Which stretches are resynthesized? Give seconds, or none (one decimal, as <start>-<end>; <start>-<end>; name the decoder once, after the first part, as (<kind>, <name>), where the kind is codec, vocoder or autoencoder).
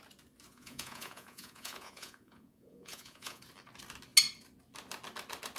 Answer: 0.5-3.4 (vocoder, Vocos)